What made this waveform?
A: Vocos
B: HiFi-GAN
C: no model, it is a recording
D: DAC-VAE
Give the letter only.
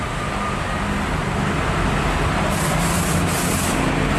C